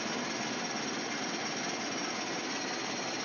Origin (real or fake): real